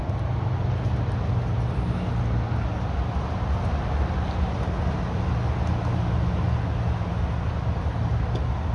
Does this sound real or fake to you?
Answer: real